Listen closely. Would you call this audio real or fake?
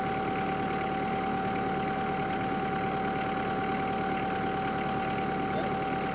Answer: real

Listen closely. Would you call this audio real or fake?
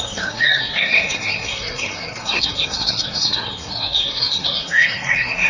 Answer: fake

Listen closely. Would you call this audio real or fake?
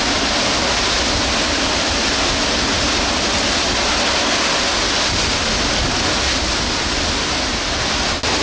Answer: real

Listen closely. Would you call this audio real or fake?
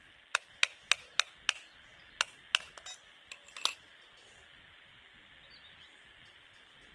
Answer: real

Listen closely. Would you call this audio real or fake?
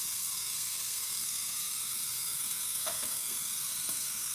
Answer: fake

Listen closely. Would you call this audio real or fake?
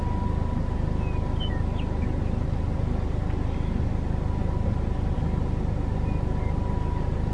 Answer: real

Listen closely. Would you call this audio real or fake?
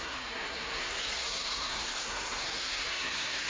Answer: fake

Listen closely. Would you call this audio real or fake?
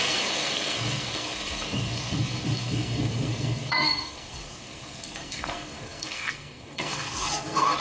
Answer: fake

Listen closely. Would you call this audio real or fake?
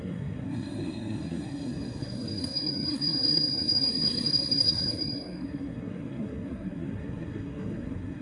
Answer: fake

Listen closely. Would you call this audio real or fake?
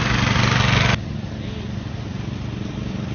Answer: real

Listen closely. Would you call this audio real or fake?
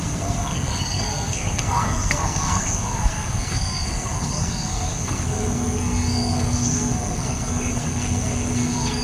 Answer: fake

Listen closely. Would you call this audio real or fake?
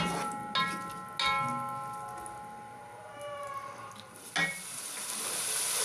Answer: real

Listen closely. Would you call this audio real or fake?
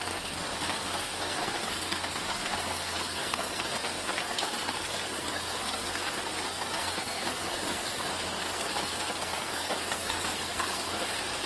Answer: fake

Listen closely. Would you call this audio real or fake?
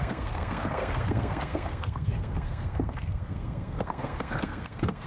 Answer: fake